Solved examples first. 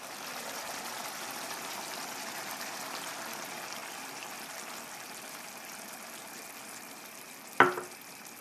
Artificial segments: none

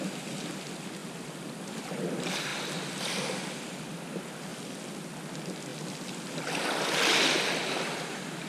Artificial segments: none

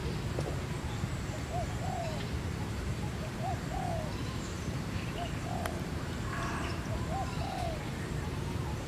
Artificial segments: 0.6-8.9 (vocoder, BigVGAN v2)

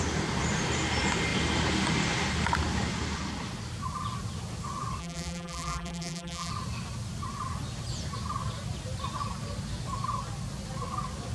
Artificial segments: 5.0-6.5 (vocoder, BigVGAN v2)

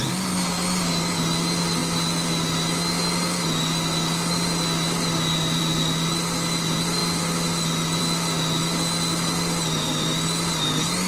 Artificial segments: none

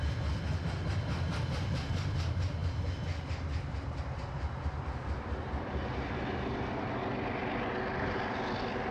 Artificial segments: none

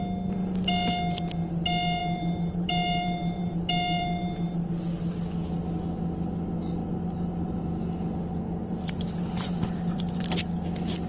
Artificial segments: 2.0-4.7 (vocoder, BigVGAN v2); 6.8-7.6; 8.6-10.2